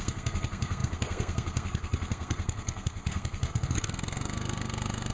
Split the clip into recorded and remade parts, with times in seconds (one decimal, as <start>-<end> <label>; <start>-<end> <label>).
0.0-5.1 remade